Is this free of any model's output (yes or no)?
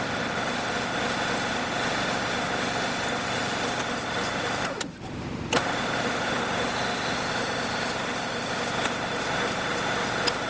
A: yes